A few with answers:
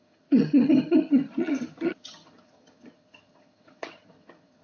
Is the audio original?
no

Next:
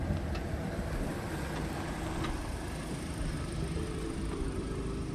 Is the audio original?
no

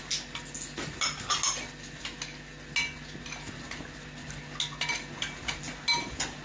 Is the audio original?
yes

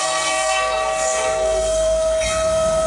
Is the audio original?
no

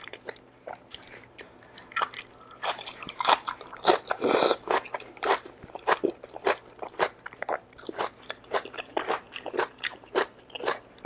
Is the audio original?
no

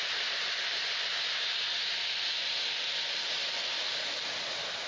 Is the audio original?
yes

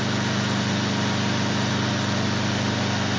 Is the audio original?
yes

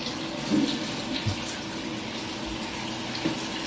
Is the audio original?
yes